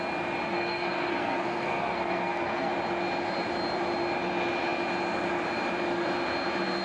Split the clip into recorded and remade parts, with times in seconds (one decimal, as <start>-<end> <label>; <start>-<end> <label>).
0.0-0.5 recorded; 0.5-2.7 remade; 2.7-6.8 recorded